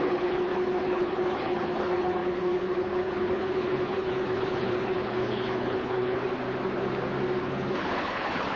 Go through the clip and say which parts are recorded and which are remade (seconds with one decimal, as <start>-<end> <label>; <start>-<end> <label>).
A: 0.0-6.2 remade; 6.2-7.4 recorded; 7.4-8.6 remade

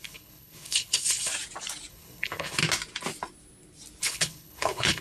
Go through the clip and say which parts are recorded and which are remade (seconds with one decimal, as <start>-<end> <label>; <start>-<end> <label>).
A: 0.0-1.3 remade; 1.3-1.9 recorded; 1.9-2.6 remade; 2.6-4.0 recorded; 4.0-5.0 remade

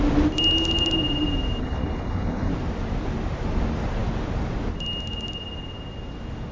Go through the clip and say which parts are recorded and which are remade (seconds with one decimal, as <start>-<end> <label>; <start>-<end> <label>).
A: 0.0-1.6 recorded; 1.6-2.5 remade; 2.5-6.5 recorded

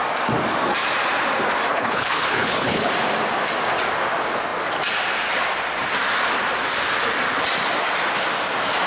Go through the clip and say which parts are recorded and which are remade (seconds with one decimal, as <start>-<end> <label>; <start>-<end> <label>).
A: 0.0-1.7 recorded; 1.7-2.9 remade; 2.9-8.9 recorded

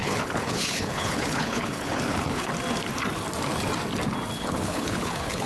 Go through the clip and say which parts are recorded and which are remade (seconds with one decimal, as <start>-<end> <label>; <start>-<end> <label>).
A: 0.0-2.5 remade; 2.5-4.4 recorded; 4.4-5.5 remade

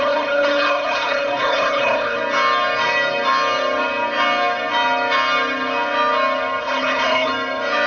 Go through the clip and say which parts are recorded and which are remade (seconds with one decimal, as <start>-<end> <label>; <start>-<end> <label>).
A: 0.0-2.2 remade; 2.2-6.6 recorded; 6.6-7.3 remade; 7.3-7.9 recorded

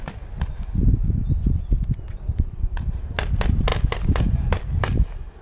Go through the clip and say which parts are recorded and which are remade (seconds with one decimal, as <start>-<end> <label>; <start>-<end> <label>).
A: 0.0-5.4 recorded

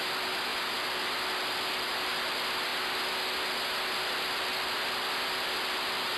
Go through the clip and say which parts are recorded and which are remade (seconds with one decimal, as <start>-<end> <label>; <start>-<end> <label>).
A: 0.0-6.2 recorded